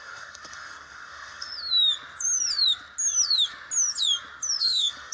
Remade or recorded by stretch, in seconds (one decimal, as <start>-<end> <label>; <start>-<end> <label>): 0.0-1.5 remade; 1.5-4.6 recorded; 4.6-5.1 remade